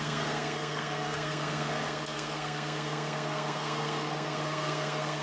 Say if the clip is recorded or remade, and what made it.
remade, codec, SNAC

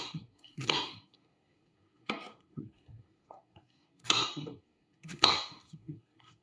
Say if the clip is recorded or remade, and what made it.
remade, codec, SNAC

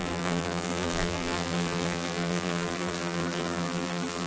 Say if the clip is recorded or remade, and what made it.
remade, vocoder, BigVGAN v2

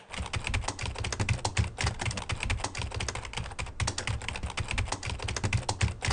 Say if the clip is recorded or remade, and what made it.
recorded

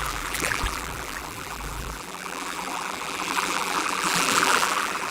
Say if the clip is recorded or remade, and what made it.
remade, vocoder, BigVGAN v2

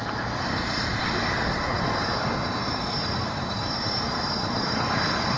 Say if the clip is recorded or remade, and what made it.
recorded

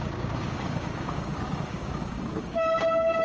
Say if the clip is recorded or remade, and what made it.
remade, codec, DAC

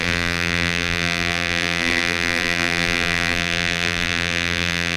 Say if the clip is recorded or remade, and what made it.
remade, vocoder, BigVGAN v2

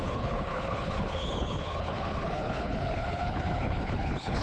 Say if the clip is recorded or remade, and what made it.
remade, codec, HILCodec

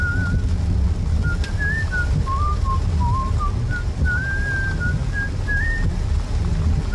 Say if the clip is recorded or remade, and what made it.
recorded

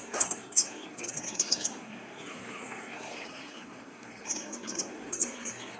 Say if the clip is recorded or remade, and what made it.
remade, codec, SNAC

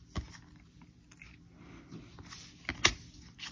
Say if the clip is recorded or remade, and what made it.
recorded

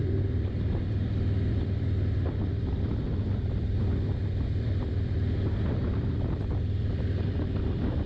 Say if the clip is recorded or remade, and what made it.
remade, vocoder, BigVGAN v2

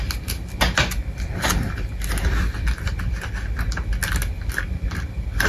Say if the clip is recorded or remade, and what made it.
recorded